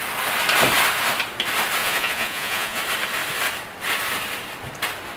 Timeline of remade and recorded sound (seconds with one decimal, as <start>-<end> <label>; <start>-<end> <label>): 0.0-1.8 recorded; 1.8-2.8 remade; 2.8-5.2 recorded